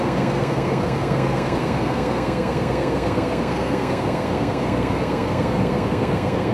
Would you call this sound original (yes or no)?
no